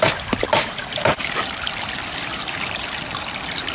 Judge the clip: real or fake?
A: real